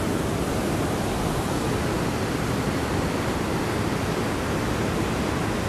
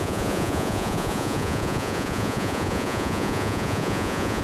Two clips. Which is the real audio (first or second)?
first